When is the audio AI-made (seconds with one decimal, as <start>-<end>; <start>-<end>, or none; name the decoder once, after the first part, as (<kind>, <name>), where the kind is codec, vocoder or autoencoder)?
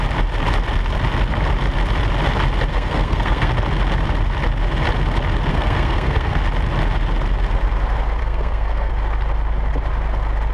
2.7-3.5 (codec, SNAC); 5.5-6.4; 8.2-8.9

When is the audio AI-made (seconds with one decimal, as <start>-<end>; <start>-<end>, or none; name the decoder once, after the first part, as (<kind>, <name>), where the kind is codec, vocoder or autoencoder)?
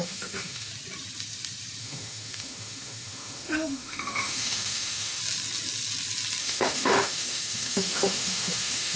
0.0-0.7 (autoencoder, DAC-VAE); 1.8-5.2; 6.4-9.0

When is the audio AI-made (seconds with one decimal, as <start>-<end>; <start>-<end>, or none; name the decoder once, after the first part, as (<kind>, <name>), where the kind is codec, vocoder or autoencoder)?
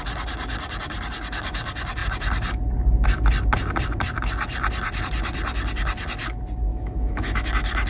6.7-7.5 (autoencoder, DAC-VAE)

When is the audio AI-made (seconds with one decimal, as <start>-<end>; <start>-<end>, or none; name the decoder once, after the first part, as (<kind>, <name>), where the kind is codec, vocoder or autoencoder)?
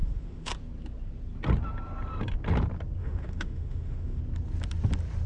0.0-0.5 (autoencoder, DAC-VAE); 3.0-4.2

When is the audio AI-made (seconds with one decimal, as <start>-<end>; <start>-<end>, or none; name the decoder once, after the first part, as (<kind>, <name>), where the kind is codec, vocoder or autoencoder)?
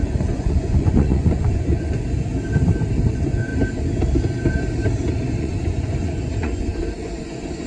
0.0-2.3 (vocoder, Vocos); 3.1-3.5; 5.4-7.7